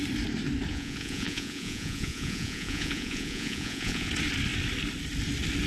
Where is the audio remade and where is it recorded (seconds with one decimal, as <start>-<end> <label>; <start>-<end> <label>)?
0.0-0.7 recorded; 0.7-4.1 remade; 4.1-5.7 recorded